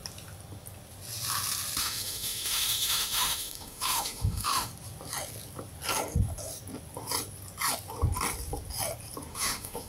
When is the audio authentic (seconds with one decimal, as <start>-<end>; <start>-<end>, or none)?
0.0-1.8; 4.7-9.3